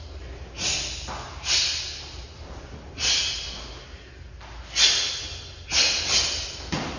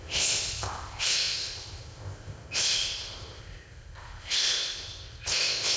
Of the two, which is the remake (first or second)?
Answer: second